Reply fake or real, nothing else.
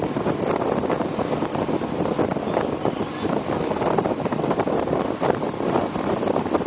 real